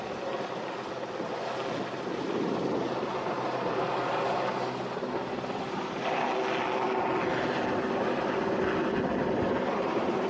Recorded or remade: recorded